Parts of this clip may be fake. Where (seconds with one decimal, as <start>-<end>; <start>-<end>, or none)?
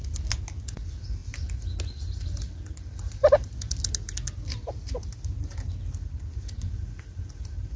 none